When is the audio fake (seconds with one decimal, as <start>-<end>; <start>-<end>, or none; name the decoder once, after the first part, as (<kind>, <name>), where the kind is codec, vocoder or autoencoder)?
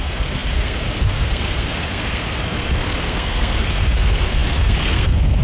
0.0-5.4 (codec, SNAC)